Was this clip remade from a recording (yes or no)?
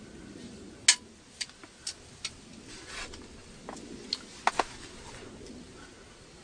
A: no